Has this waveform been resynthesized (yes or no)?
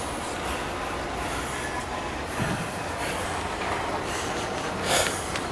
no